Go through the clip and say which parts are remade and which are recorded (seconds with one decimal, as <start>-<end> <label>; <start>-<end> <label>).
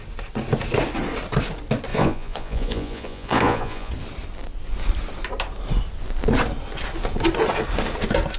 0.0-1.9 recorded; 1.9-3.9 remade; 3.9-8.4 recorded